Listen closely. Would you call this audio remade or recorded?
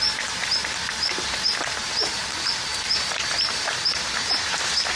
remade